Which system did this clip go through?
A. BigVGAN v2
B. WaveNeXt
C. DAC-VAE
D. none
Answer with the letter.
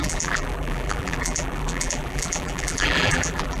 A